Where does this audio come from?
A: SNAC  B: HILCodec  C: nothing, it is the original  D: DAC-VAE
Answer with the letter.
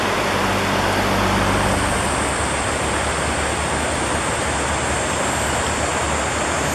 C